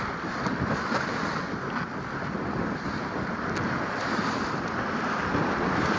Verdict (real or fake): real